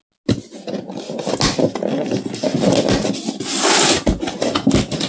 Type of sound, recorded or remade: recorded